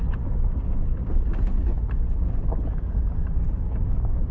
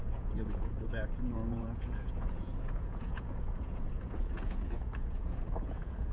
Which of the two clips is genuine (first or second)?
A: first